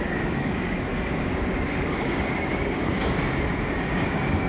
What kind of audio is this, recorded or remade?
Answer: remade